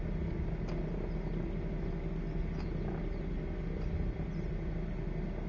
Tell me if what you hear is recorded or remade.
recorded